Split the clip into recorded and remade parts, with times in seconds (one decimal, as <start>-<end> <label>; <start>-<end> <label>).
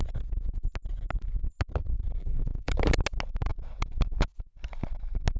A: 0.0-2.2 recorded; 2.2-2.7 remade; 2.7-5.4 recorded